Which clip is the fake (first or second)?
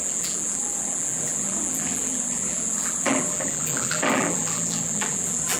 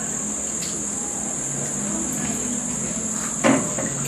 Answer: first